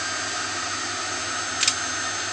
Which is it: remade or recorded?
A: recorded